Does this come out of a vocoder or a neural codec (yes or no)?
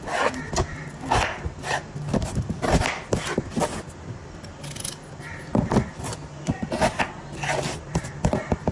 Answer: no